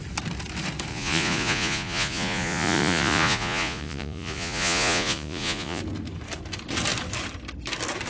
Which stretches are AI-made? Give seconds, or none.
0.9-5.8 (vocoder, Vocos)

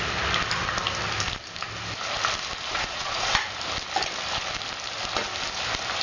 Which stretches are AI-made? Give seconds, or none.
2.7-3.3 (vocoder, Vocos)

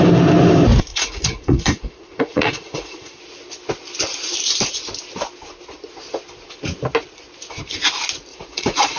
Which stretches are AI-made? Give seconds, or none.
0.9-3.2 (vocoder, Vocos); 8.3-9.0

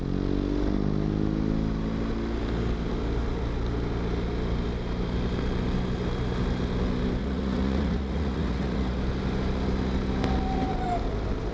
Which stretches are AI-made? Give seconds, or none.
7.2-9.0 (vocoder, Vocos)